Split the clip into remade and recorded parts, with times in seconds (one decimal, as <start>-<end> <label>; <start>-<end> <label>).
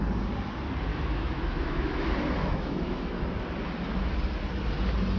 0.0-0.9 recorded; 0.9-2.0 remade; 2.0-2.4 recorded; 2.4-3.2 remade; 3.2-5.2 recorded